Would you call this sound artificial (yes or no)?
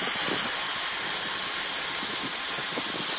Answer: no